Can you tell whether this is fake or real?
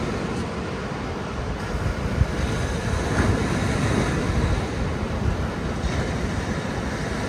real